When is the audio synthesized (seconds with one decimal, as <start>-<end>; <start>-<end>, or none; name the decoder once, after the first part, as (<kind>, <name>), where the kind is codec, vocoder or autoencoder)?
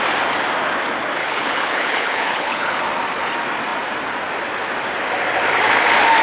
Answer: 1.2-2.8 (codec, HILCodec)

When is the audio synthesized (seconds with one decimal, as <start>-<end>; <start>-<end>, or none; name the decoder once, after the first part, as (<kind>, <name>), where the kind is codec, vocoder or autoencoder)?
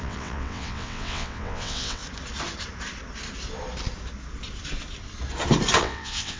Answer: 0.0-2.0 (vocoder, WaveNeXt); 5.8-6.4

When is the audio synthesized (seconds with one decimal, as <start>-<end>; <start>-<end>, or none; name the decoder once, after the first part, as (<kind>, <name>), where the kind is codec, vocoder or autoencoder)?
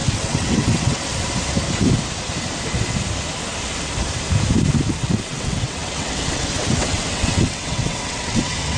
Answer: 0.0-1.1 (vocoder, WaveNeXt); 4.9-8.8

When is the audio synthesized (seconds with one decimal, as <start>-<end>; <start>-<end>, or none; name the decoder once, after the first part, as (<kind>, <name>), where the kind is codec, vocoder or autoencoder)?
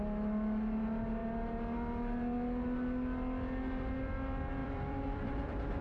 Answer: 4.6-5.8 (vocoder, BigVGAN v2)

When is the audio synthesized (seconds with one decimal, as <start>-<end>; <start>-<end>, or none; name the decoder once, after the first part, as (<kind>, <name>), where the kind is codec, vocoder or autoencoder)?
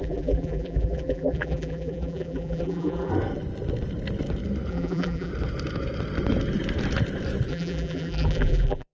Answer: 0.0-3.1 (vocoder, BigVGAN v2); 4.7-5.3; 7.5-8.9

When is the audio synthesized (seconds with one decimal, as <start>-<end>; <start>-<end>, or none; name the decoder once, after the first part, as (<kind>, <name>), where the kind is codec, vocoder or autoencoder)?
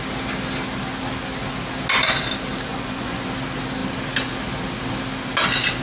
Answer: 2.7-3.2 (vocoder, Vocos)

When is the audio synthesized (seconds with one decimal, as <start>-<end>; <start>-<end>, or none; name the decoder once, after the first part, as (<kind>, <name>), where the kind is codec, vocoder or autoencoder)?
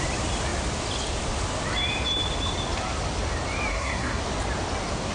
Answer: 3.7-4.2 (codec, SNAC)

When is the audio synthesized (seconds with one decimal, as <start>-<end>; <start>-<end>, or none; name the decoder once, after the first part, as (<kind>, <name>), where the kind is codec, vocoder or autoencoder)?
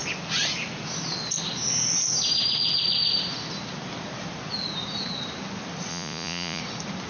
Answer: 5.9-6.6 (vocoder, Vocos)